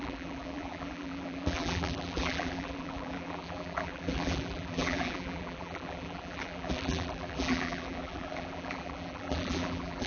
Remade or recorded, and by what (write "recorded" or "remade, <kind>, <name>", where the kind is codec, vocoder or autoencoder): remade, vocoder, BigVGAN v2